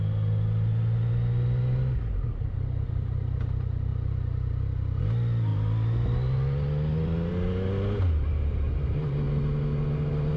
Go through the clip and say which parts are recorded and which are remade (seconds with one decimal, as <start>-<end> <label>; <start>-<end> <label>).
0.0-10.4 recorded